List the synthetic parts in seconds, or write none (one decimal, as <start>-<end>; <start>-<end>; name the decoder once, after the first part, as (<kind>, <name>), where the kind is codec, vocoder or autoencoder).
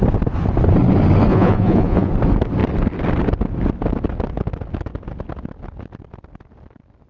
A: 1.3-2.1 (vocoder, Vocos)